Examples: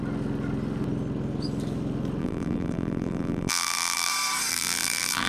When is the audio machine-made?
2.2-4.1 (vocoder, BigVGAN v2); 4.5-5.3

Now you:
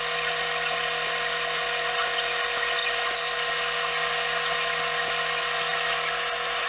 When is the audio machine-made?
2.8-3.5 (vocoder, BigVGAN v2)

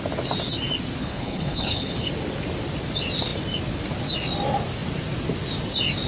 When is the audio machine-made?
1.0-2.1 (codec, HILCodec)

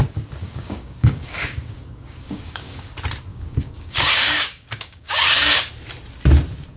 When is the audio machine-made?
0.4-2.9 (codec, DAC); 3.3-5.7

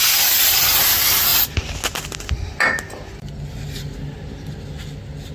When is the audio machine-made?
none

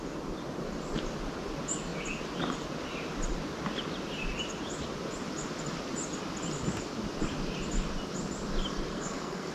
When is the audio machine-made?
8.9-9.5 (codec, SNAC)

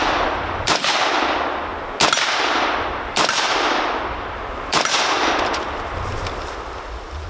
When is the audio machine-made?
0.0-1.7 (vocoder, BigVGAN v2); 3.0-7.3

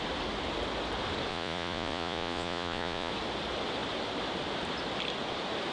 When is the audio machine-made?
1.3-3.1 (vocoder, Vocos)